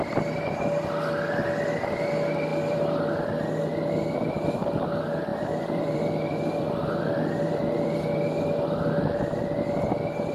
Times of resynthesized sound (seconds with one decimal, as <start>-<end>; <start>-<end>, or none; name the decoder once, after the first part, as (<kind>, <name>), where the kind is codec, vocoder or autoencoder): 2.5-3.0 (vocoder, BigVGAN v2); 5.3-8.3